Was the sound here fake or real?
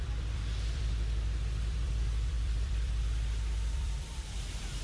fake